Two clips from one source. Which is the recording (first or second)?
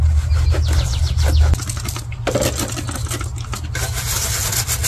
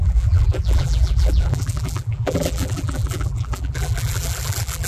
first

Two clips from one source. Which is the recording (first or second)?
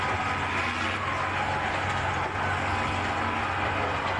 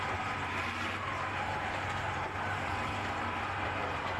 first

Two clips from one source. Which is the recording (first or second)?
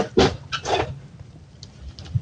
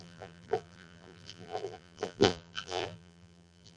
first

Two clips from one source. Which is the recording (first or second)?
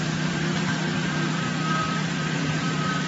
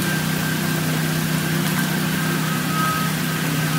second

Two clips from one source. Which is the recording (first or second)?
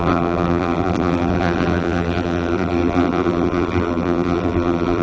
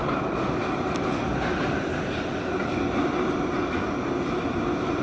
second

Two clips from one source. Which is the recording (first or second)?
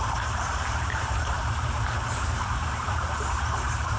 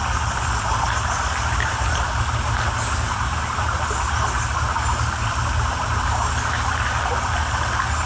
second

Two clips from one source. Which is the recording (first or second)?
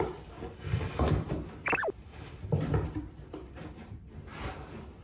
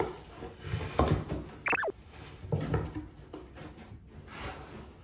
second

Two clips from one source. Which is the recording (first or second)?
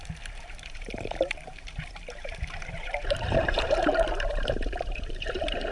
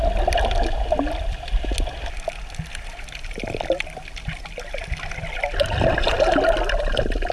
second